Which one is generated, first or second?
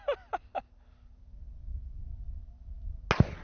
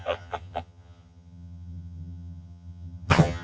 second